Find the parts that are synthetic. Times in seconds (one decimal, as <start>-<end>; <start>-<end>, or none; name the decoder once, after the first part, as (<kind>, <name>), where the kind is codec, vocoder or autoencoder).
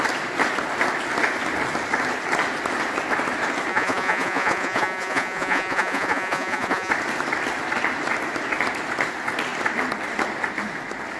3.7-6.9 (vocoder, Vocos)